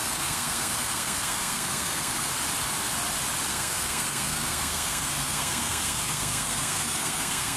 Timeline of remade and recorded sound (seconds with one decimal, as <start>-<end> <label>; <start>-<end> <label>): 0.0-2.3 remade; 2.3-3.5 recorded; 3.5-7.6 remade